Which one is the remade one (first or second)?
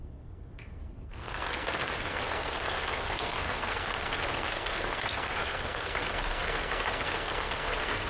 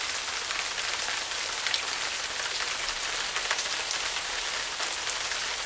first